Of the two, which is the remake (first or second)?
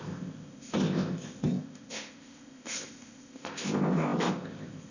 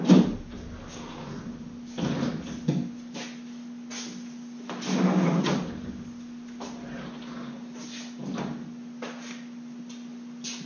first